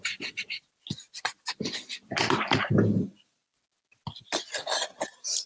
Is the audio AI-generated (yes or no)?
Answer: no